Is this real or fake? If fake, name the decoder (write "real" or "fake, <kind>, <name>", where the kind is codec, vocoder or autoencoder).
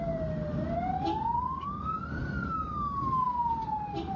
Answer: real